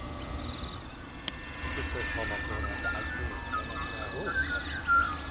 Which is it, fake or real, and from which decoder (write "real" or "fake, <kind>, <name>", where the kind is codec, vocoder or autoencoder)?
real